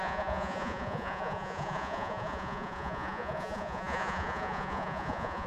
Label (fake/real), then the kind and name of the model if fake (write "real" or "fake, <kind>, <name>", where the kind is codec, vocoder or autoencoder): fake, vocoder, Vocos